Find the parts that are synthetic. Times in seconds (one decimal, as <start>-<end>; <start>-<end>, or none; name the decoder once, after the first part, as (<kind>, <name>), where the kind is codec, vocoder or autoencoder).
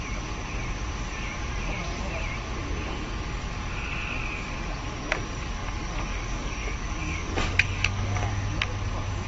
5.6-8.3 (codec, DAC)